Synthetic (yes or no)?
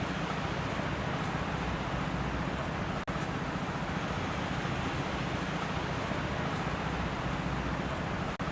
no